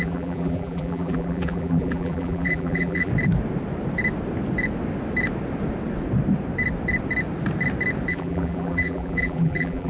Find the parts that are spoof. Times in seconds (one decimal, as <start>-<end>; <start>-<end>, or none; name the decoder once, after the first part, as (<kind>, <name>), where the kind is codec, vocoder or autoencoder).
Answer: 0.0-3.1 (vocoder, BigVGAN v2); 8.1-9.9